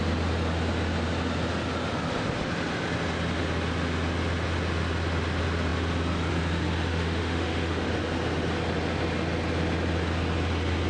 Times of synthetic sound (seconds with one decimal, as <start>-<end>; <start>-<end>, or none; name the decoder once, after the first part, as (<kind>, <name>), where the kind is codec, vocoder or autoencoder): 6.9-7.9 (autoencoder, DAC-VAE)